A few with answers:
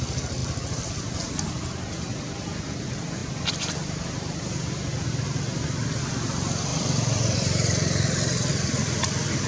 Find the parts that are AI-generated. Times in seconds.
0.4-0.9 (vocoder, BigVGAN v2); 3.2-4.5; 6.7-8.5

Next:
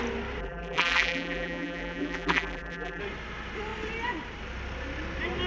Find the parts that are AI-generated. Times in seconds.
0.4-3.0 (vocoder, BigVGAN v2)

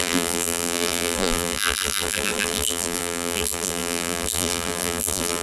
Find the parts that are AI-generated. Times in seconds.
0.0-5.4 (vocoder, BigVGAN v2)

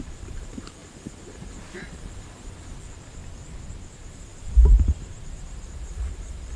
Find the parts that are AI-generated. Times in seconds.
0.0-3.2 (vocoder, BigVGAN v2); 3.9-4.3; 5.0-6.6

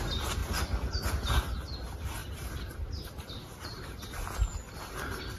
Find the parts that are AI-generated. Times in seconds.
2.2-3.5 (vocoder, BigVGAN v2)